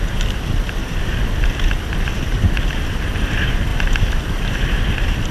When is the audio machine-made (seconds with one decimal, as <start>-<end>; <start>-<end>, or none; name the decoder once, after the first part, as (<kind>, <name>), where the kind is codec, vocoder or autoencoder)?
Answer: 0.0-3.7 (vocoder, BigVGAN v2); 4.8-5.3